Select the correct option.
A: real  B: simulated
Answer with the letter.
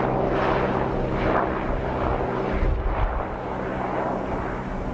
A